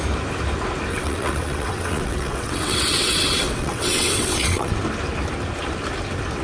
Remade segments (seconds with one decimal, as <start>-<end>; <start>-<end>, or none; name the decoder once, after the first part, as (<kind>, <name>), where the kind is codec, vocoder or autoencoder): 0.9-4.7 (vocoder, WaveNeXt)